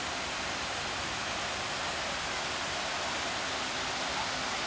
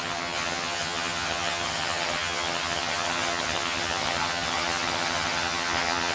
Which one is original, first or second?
first